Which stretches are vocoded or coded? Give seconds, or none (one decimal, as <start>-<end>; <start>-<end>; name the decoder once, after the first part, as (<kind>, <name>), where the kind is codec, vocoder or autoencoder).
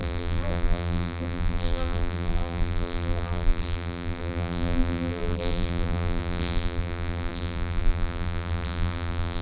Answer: 0.0-9.4 (vocoder, BigVGAN v2)